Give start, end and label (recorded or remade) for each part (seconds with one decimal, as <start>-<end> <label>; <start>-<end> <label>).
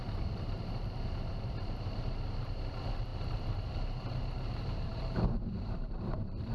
0.0-6.5 remade